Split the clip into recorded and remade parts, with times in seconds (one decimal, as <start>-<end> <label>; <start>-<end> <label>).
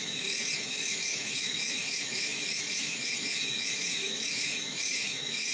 0.0-5.5 remade